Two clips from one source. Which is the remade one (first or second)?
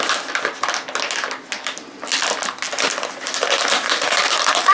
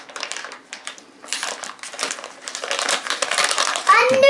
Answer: second